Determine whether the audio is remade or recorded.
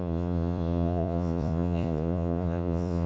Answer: remade